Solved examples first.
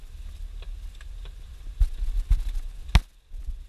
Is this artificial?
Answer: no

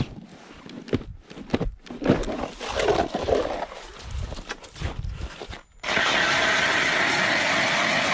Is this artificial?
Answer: no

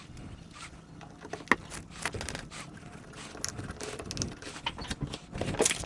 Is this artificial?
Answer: no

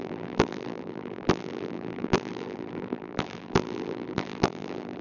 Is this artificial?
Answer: yes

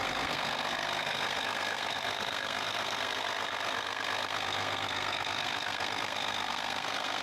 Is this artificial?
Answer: yes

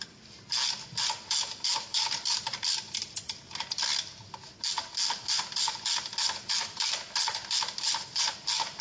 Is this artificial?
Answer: no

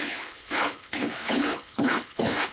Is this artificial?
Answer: yes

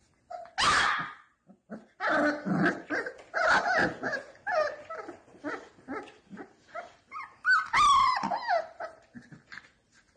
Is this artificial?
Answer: no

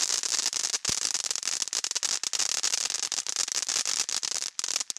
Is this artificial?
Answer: no